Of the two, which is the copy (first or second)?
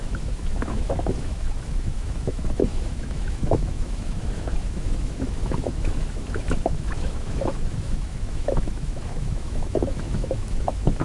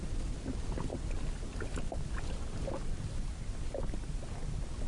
first